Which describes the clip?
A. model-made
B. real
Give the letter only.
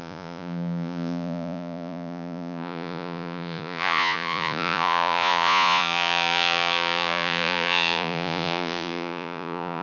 A